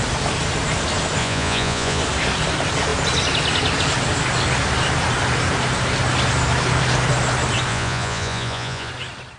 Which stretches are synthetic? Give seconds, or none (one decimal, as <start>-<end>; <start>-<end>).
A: 1.2-2.0; 7.7-8.9

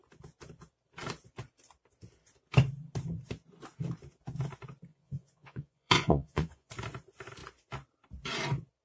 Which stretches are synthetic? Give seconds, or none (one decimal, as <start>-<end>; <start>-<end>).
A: 4.9-6.7